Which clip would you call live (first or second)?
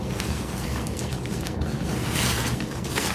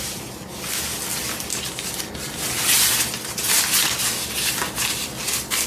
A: second